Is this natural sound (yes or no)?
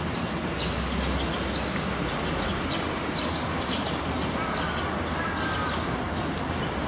yes